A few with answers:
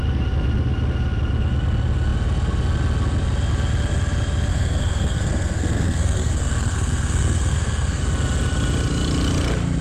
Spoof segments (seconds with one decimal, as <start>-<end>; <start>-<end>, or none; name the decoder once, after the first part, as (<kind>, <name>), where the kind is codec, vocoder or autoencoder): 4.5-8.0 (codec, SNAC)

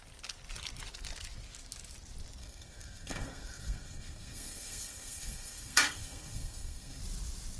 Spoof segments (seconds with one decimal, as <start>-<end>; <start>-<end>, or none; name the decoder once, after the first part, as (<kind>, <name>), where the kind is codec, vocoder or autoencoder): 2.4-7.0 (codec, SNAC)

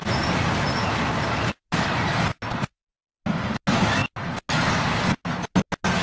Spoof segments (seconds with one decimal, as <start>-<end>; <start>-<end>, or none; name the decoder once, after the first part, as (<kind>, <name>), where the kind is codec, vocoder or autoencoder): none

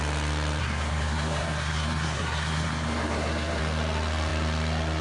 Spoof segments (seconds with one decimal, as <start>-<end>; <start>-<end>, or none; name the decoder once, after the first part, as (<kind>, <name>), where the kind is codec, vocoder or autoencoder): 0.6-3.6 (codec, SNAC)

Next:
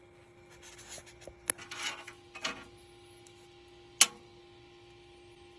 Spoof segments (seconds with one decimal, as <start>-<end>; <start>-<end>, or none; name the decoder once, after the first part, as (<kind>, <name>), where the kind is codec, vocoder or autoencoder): none